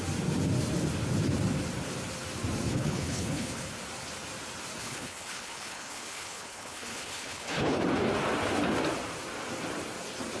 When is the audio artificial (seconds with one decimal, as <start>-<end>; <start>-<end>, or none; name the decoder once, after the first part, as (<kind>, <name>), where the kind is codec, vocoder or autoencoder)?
2.7-3.7 (codec, HILCodec); 4.8-7.8